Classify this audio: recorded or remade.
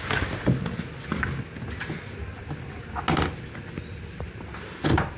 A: recorded